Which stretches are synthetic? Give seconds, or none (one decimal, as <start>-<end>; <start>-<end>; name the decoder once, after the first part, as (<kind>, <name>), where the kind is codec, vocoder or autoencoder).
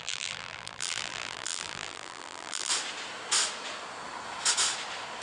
0.0-2.7 (vocoder, BigVGAN v2)